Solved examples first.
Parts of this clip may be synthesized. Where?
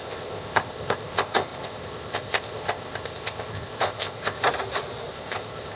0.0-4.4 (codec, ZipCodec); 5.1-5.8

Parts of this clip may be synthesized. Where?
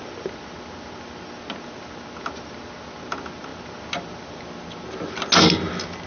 none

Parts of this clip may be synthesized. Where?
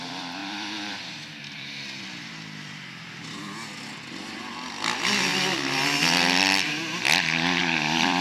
0.0-3.4 (vocoder, BigVGAN v2); 4.7-5.3; 7.6-8.2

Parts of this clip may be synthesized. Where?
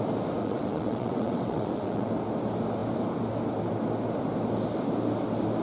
0.4-2.1 (vocoder, WaveNeXt)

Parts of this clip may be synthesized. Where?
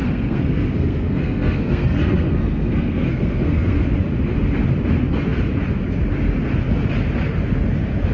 0.0-3.9 (codec, SNAC)